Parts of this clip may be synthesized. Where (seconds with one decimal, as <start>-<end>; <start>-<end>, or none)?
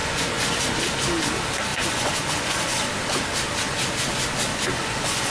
0.0-0.6; 1.7-2.9; 4.5-5.3